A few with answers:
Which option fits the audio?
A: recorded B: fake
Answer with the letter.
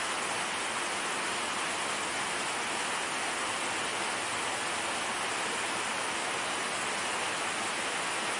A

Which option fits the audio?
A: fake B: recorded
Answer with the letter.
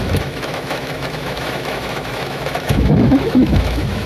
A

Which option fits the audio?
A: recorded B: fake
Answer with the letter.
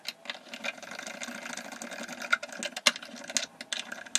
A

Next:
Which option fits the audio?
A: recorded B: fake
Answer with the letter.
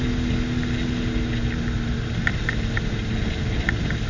A